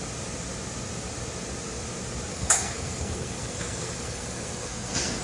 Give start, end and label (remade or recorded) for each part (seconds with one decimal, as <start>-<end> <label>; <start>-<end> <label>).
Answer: 0.0-2.3 recorded; 2.3-5.2 remade